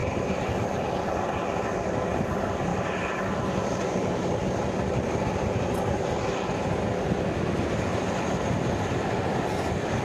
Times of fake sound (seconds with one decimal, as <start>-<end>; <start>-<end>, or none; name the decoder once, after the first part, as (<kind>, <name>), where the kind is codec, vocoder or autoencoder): 0.0-0.8 (vocoder, BigVGAN v2); 2.7-4.3